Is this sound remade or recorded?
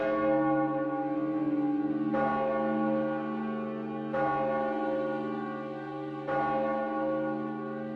recorded